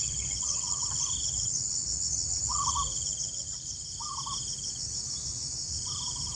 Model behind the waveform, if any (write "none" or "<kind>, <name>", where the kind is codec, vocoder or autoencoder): none